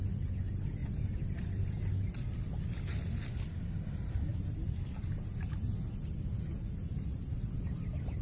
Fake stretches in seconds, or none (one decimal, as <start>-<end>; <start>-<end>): none